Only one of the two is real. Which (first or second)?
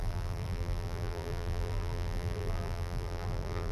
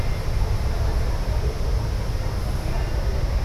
second